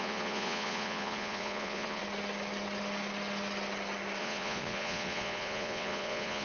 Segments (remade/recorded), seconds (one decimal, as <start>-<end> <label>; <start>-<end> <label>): 0.0-2.0 remade; 2.0-4.2 recorded; 4.2-6.4 remade